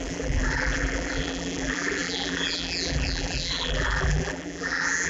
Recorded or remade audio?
remade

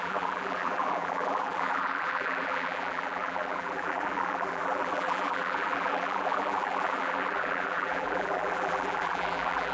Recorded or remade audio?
remade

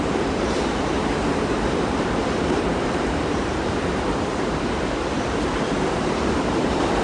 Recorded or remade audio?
remade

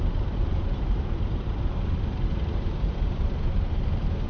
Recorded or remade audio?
remade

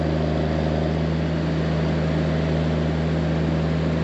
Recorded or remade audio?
recorded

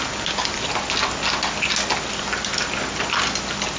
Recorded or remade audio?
recorded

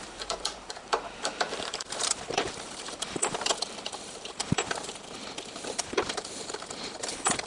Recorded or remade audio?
remade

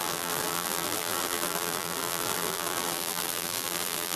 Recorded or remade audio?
remade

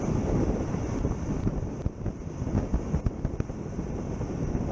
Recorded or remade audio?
recorded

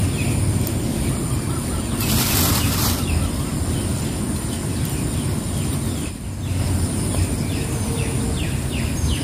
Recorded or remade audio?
remade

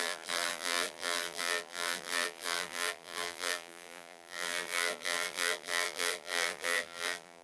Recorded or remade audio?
remade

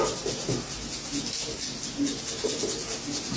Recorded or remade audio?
recorded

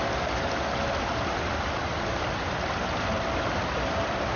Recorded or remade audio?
remade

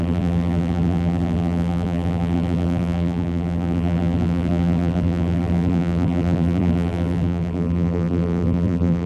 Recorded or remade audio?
remade